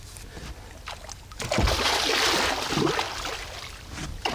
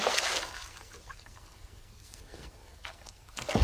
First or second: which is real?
first